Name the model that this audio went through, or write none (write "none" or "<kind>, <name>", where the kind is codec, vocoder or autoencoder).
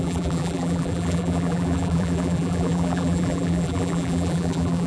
vocoder, BigVGAN v2